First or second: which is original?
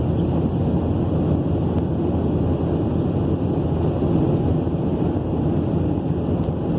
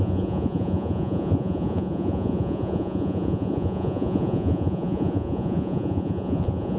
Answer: first